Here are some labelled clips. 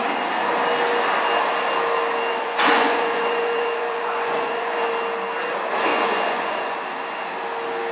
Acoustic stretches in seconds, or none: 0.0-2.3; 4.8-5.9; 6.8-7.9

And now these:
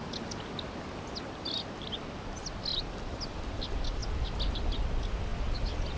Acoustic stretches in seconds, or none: 0.0-2.7; 3.4-6.0

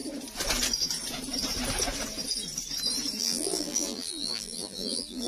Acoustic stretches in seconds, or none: 0.0-3.2

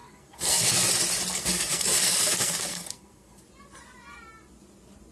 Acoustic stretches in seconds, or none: 0.9-1.3; 3.4-5.1

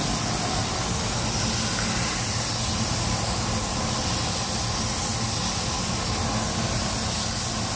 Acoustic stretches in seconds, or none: 0.0-7.8